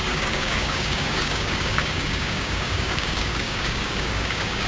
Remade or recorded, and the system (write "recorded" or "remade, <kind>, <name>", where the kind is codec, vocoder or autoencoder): remade, codec, DAC